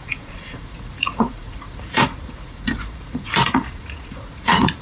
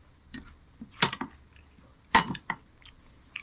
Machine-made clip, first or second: first